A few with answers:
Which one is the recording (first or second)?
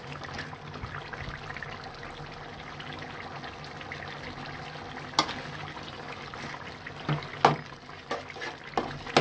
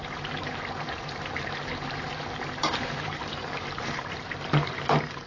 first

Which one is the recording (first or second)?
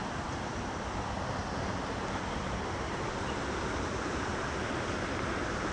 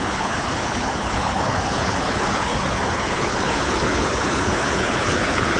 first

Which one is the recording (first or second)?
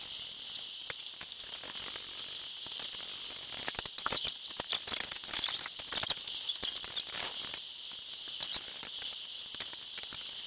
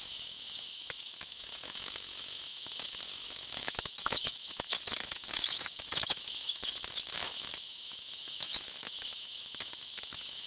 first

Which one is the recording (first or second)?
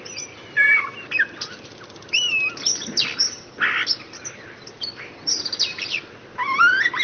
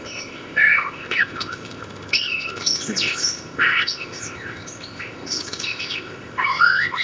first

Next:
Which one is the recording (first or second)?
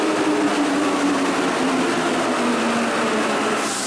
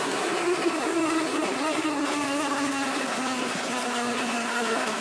first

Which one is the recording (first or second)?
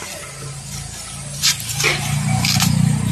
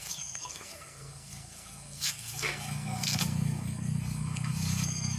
first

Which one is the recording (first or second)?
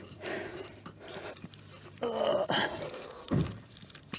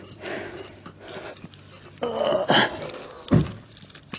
second